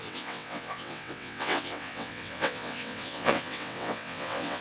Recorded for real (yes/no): no